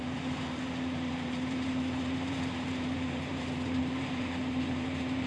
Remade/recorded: remade